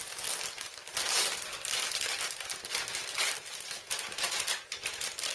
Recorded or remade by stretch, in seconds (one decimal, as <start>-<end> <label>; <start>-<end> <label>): 0.0-5.3 recorded